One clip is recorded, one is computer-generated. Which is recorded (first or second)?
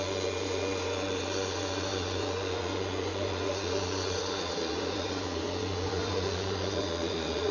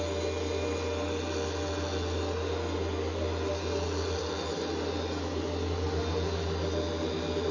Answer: second